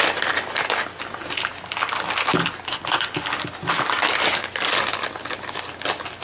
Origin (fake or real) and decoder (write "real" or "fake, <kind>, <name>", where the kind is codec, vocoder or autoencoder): real